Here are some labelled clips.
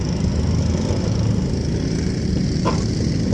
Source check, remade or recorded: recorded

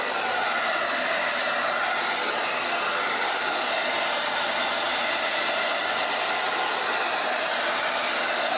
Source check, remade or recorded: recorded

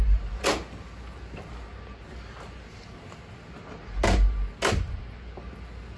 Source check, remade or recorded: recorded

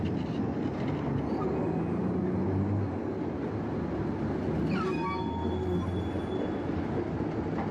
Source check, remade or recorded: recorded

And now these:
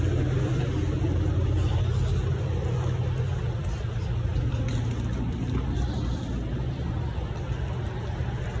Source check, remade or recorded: recorded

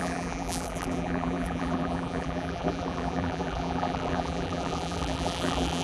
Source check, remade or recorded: remade